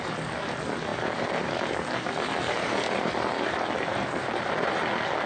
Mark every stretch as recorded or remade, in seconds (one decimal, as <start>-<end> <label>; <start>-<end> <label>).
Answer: 0.0-0.9 recorded; 0.9-1.5 remade; 1.5-3.9 recorded; 3.9-4.7 remade; 4.7-5.3 recorded